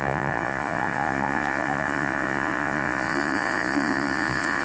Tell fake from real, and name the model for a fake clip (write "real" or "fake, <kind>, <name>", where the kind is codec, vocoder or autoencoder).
fake, vocoder, Vocos